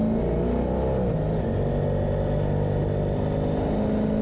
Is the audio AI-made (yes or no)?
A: no